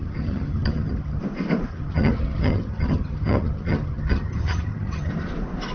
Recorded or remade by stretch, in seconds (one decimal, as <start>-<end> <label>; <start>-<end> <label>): 0.0-1.2 remade; 1.2-1.7 recorded; 1.7-5.1 remade; 5.1-5.7 recorded